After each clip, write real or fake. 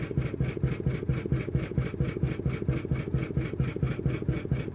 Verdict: real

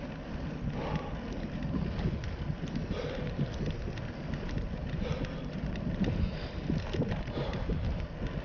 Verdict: real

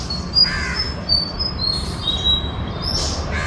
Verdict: real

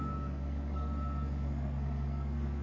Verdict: fake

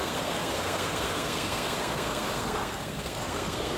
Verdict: fake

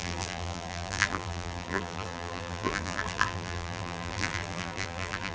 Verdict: fake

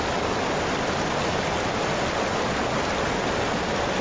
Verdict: real